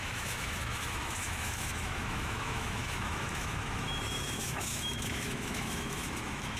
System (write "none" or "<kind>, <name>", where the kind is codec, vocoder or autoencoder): autoencoder, DAC-VAE